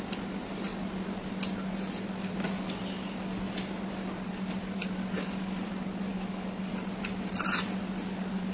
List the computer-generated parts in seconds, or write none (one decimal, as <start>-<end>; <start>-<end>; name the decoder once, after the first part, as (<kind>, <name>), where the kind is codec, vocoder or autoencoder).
6.1-6.7 (codec, DAC)